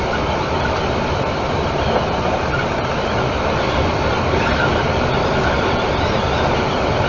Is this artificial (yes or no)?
no